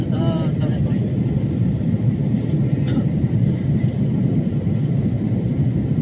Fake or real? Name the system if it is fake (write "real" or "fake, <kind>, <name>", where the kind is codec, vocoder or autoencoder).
fake, vocoder, BigVGAN v2